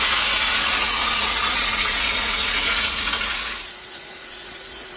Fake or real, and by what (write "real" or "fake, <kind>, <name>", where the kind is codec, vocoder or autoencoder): fake, vocoder, Vocos